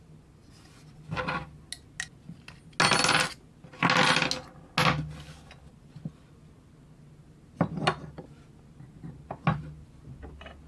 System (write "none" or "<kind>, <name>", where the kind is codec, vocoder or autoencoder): none